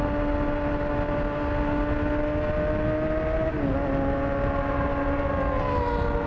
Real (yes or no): yes